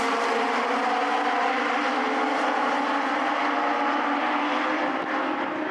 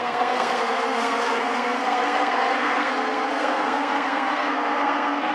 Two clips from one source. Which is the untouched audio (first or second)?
first